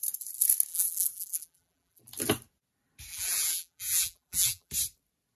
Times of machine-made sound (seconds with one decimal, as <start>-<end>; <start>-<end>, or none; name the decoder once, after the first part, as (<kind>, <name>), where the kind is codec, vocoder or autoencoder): 0.7-2.0 (vocoder, BigVGAN v2); 3.1-4.7